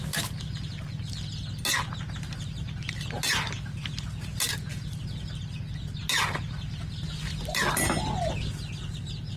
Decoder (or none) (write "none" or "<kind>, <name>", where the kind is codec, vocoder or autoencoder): none